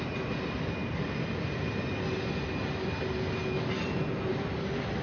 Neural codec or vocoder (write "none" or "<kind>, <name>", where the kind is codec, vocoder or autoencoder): none